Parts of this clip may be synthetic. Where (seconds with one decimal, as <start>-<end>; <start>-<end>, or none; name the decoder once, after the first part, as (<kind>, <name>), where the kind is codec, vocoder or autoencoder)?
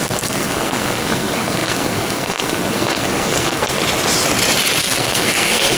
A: 0.0-3.8 (codec, SNAC); 4.8-5.8